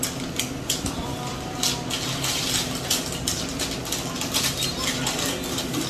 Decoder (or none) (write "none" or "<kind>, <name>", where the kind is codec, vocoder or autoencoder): none